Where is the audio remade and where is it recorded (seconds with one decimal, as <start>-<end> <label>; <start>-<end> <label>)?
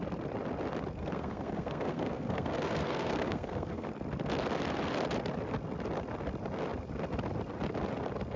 0.0-1.0 recorded; 1.0-3.9 remade; 3.9-8.4 recorded